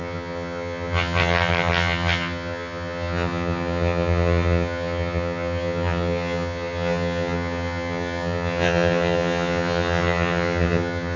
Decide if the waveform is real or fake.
fake